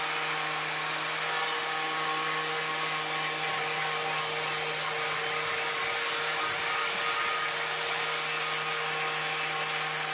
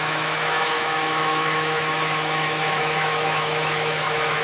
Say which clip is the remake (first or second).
second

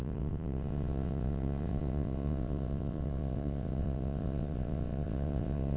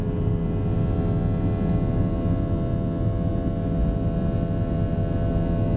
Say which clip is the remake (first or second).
first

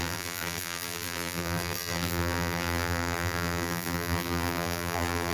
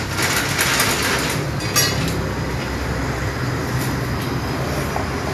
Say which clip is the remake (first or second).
first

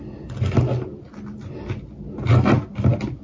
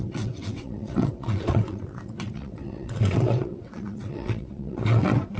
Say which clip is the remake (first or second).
second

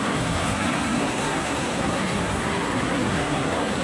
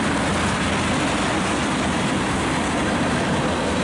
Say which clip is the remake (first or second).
first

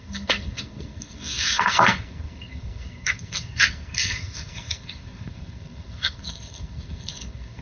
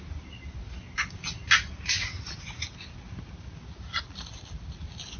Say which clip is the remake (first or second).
first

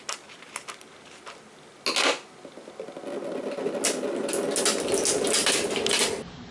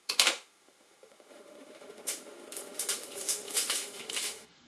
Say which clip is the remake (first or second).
second